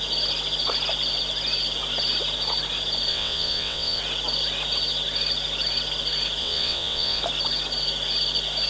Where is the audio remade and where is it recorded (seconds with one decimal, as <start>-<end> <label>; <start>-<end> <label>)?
0.0-3.1 recorded; 3.1-4.0 remade; 4.0-6.4 recorded; 6.4-7.2 remade; 7.2-8.7 recorded